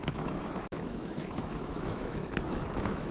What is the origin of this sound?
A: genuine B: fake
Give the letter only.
B